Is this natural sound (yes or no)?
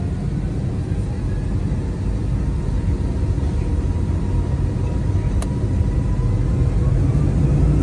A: yes